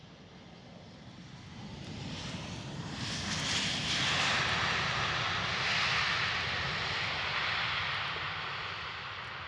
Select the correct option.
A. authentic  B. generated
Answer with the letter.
A